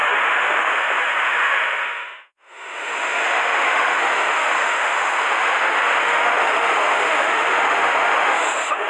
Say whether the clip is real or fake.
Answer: fake